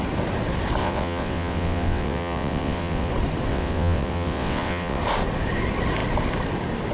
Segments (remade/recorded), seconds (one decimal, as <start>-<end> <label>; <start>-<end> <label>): 0.0-0.8 recorded; 0.8-3.1 remade; 3.1-3.5 recorded; 3.5-5.0 remade; 5.0-6.9 recorded